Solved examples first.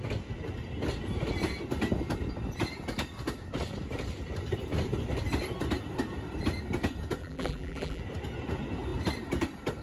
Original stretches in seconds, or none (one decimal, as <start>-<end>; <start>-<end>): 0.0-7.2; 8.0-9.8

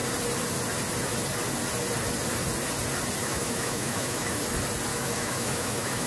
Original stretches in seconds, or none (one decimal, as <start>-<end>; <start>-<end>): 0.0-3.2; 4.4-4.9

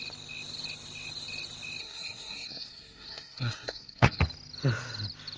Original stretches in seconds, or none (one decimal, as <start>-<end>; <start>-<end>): 0.0-1.8; 4.2-5.4

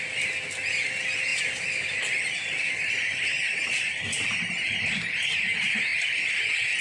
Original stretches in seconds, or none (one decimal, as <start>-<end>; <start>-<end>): 0.0-6.8

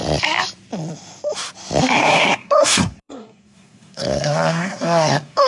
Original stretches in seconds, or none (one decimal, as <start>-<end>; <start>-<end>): 0.0-2.0

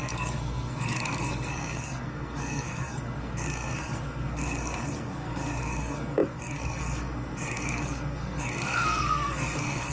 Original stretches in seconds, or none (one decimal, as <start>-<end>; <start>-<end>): none

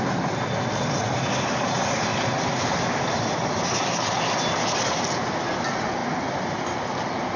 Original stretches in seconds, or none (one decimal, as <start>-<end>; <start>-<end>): 0.0-2.1; 5.0-6.0

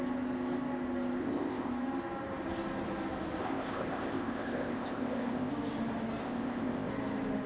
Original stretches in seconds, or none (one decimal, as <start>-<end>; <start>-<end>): 0.0-1.2; 1.7-3.4; 5.5-6.2; 6.9-7.5